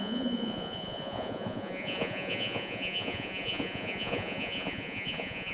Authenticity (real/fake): fake